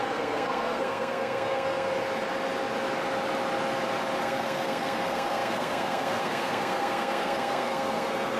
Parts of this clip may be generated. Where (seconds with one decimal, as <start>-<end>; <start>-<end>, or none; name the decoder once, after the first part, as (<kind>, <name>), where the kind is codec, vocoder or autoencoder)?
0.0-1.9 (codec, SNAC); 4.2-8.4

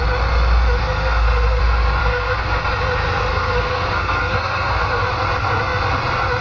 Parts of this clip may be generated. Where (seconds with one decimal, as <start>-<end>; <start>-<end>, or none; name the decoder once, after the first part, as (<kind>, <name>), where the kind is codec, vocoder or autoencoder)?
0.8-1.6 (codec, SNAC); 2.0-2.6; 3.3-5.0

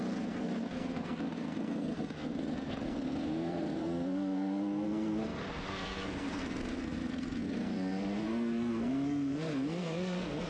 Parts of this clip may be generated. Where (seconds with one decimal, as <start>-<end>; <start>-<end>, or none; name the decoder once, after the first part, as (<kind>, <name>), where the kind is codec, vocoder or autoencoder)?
0.0-10.5 (codec, SNAC)

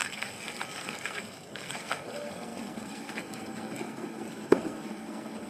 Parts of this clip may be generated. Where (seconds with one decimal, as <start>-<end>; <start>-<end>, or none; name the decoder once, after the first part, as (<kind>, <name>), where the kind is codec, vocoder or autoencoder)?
0.0-5.5 (codec, SNAC)

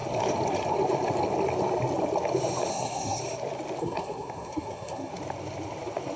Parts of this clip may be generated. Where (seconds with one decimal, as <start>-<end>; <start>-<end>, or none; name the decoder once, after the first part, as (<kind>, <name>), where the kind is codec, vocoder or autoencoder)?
2.7-3.2 (codec, SNAC); 3.8-5.1

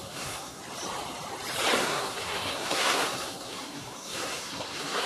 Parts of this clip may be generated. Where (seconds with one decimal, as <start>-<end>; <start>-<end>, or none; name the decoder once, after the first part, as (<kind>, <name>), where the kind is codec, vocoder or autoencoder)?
0.0-0.6 (codec, SNAC); 1.8-5.1

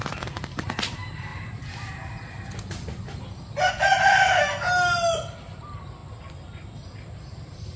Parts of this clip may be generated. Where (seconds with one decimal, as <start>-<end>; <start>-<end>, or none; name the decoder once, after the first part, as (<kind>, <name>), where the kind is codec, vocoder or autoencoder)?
none

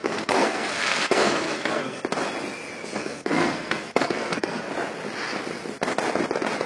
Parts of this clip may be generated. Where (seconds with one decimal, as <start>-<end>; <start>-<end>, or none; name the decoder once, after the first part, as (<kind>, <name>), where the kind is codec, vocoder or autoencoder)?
0.0-2.0 (codec, SNAC); 3.0-4.7